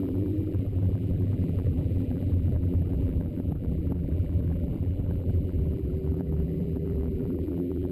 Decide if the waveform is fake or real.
fake